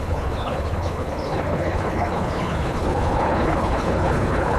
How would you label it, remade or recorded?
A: remade